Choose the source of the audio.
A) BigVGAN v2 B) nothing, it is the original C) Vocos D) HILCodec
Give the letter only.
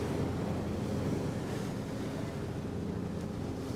B